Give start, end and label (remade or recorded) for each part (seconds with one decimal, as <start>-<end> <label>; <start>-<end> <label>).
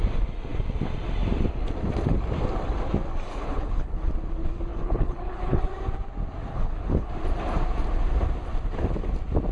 0.0-3.3 recorded; 3.3-4.1 remade; 4.1-4.7 recorded; 4.7-5.6 remade; 5.6-6.5 recorded; 6.5-7.1 remade; 7.1-9.5 recorded